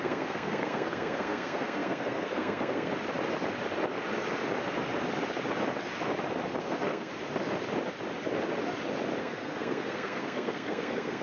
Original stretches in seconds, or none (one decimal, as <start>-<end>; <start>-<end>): 2.9-6.6; 7.1-9.2